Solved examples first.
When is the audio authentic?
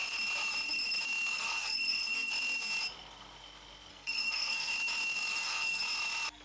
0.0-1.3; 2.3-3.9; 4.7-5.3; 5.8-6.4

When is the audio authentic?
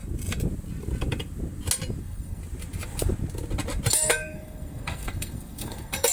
0.0-2.0; 2.4-3.9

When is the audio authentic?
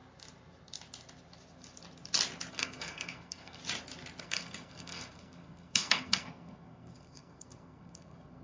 0.0-2.5; 3.6-4.2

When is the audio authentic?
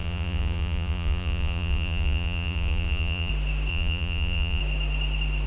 3.3-3.7; 4.6-5.5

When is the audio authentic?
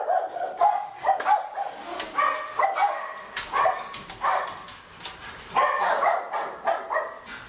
0.0-7.5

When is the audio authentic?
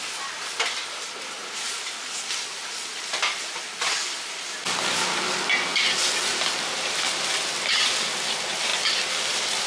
5.7-6.9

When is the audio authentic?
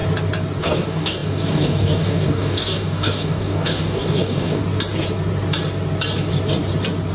0.0-0.6; 4.6-7.1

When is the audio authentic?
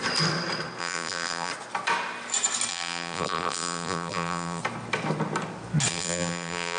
0.0-0.8; 1.5-2.7; 4.6-5.9